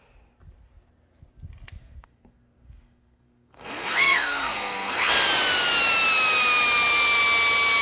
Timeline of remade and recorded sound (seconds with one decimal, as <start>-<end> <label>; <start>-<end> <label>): 0.0-1.8 recorded; 1.8-5.1 remade; 5.1-7.8 recorded